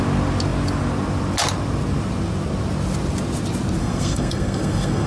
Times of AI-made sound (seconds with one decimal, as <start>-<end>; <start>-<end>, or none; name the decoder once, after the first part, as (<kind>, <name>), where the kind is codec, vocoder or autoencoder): 3.8-5.1 (codec, SNAC)